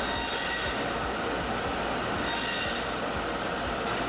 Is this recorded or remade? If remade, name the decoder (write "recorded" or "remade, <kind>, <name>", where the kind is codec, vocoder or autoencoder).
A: recorded